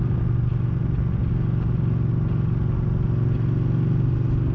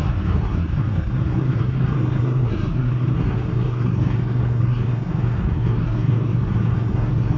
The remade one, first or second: second